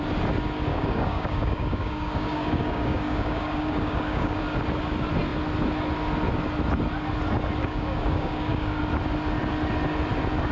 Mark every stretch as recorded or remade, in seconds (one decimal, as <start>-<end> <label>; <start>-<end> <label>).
0.0-0.7 recorded; 0.7-4.4 remade; 4.4-7.6 recorded; 7.6-8.8 remade; 8.8-10.5 recorded